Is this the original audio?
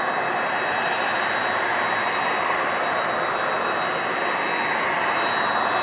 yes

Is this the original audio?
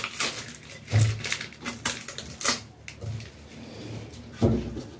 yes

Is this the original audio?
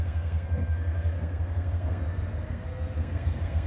no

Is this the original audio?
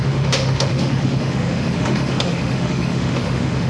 no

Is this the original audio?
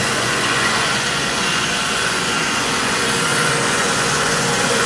no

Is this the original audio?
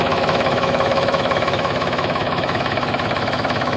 no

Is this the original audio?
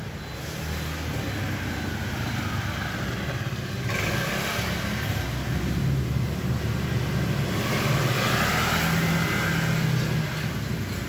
yes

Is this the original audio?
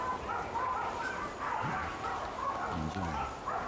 yes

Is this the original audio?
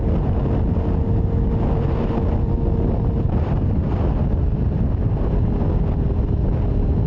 yes